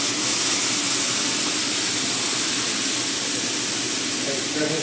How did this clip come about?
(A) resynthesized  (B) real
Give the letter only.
B